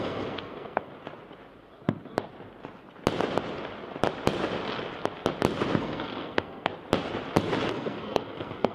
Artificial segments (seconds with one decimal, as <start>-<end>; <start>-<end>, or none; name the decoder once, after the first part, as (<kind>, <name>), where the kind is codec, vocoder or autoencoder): 0.0-0.9 (codec, SNAC); 5.8-6.7; 7.7-8.7